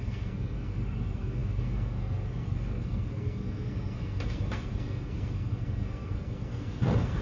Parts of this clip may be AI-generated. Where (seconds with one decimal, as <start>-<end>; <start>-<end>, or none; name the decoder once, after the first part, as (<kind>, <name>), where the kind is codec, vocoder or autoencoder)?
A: 0.0-7.2 (codec, SNAC)